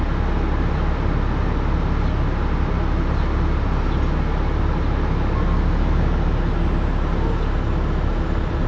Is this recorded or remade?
recorded